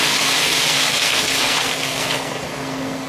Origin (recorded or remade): remade